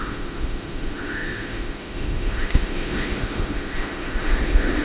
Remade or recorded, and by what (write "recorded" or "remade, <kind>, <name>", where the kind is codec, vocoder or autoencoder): remade, autoencoder, DAC-VAE